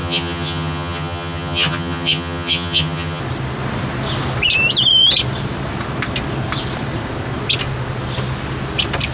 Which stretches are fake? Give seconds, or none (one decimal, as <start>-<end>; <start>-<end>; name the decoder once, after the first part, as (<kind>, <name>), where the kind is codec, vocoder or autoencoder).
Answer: 0.0-3.2 (vocoder, HiFi-GAN)